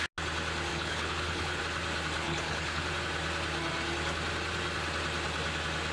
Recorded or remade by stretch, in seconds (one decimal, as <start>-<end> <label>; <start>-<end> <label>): 0.0-0.7 recorded; 0.7-1.6 remade; 1.6-2.2 recorded; 2.2-2.8 remade; 2.8-5.9 recorded